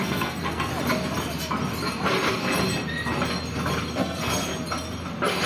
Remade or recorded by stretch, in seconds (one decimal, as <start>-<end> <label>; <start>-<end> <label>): 0.0-0.7 remade; 0.7-4.0 recorded; 4.0-4.5 remade; 4.5-5.5 recorded